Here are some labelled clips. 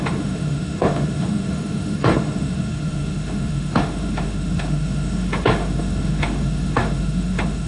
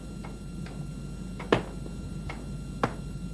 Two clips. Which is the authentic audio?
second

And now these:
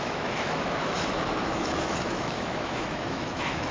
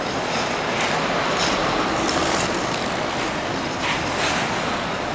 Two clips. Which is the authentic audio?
second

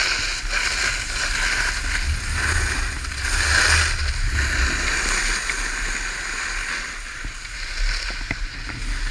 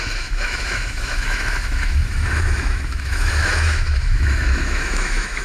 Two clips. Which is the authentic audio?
first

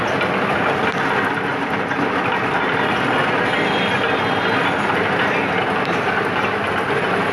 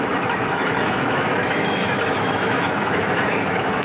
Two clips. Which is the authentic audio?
first